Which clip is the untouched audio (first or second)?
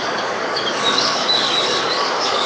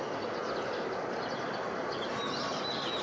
second